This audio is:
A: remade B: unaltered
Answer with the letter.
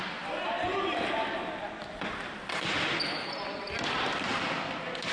B